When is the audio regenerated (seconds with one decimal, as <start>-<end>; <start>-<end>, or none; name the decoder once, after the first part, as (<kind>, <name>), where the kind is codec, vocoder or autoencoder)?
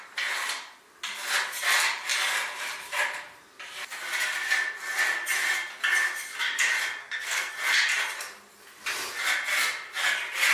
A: 7.0-7.5 (codec, SNAC)